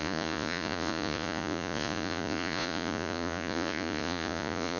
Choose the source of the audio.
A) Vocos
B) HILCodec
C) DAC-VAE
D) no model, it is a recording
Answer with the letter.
A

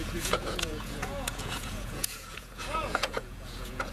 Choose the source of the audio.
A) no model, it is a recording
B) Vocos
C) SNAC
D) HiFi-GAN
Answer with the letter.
B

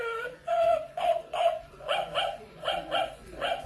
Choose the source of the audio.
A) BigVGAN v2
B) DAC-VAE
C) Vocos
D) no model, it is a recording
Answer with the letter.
C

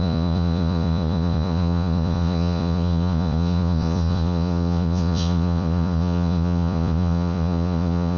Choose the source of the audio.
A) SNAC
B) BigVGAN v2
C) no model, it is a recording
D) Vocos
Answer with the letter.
D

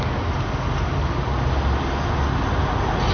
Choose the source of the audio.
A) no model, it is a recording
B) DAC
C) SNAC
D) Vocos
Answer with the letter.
A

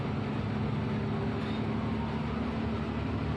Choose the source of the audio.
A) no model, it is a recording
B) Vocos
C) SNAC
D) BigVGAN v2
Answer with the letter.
A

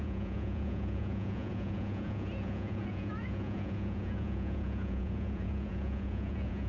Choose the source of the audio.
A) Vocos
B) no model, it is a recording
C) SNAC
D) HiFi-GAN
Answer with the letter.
A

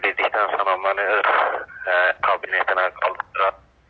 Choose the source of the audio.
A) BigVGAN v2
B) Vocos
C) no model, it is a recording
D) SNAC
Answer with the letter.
C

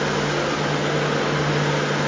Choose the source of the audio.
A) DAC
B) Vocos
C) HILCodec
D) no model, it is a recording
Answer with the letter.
D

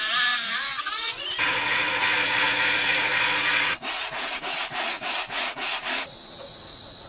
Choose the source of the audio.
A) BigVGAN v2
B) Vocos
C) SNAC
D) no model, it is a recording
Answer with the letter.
B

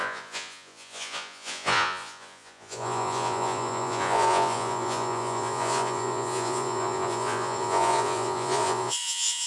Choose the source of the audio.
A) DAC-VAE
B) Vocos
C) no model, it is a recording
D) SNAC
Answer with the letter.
B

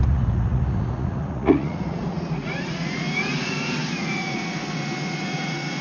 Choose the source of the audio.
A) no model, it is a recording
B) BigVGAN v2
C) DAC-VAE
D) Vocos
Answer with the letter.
D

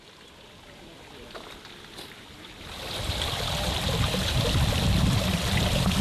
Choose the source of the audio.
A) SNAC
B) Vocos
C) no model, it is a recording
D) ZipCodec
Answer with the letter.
C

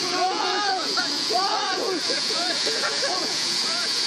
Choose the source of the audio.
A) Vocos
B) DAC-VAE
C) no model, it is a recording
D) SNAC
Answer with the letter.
A